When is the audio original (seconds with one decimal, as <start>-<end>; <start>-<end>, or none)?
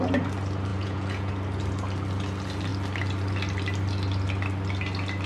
0.0-0.7; 1.3-5.3